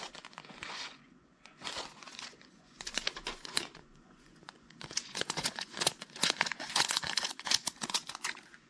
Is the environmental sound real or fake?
fake